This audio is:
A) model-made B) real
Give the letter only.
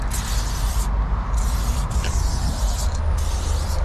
B